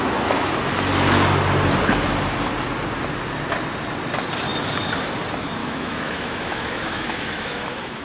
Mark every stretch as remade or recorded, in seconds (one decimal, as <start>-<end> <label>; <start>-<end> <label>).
0.0-5.6 recorded; 5.6-8.0 remade